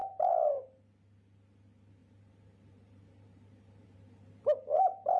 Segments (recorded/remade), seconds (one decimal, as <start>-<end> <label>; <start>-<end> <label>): 0.0-0.5 remade; 0.5-2.0 recorded; 2.0-5.2 remade